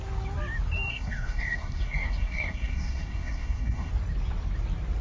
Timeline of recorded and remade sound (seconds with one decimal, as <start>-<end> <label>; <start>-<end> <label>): 0.0-0.9 recorded; 0.9-3.9 remade; 3.9-5.0 recorded